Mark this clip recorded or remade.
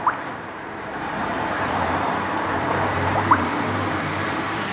remade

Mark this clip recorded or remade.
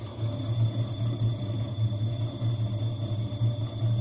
recorded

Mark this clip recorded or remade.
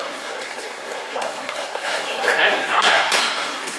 remade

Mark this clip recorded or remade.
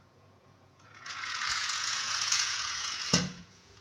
remade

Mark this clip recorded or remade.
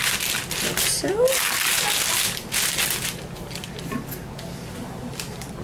recorded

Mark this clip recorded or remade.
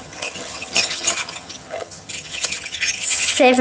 remade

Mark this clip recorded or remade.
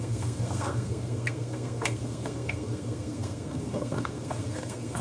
remade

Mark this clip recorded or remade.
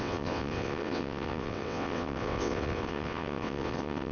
remade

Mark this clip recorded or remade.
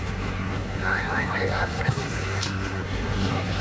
remade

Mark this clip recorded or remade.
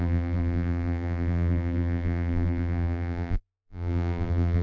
remade